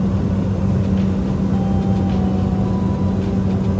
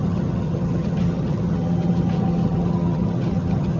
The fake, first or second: second